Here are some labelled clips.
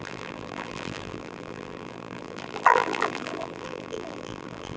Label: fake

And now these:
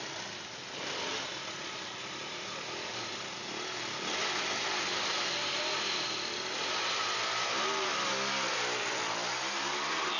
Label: real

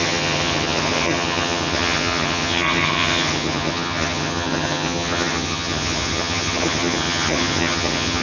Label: fake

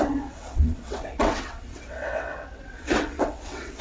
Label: fake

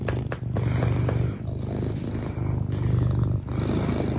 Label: real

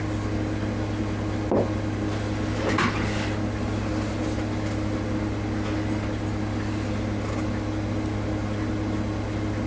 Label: real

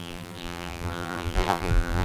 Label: fake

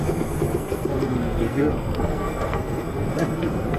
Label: fake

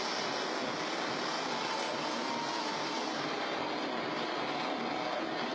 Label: real